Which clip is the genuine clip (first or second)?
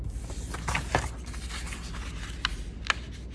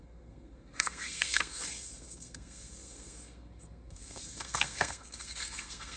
first